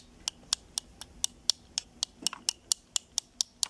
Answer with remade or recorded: recorded